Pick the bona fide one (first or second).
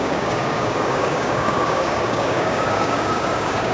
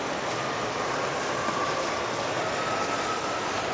second